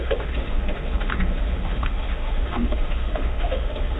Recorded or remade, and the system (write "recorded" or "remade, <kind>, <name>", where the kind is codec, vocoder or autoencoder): remade, autoencoder, DAC-VAE